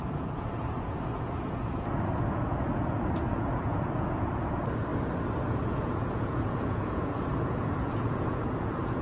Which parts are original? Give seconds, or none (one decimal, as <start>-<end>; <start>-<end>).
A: 4.9-5.5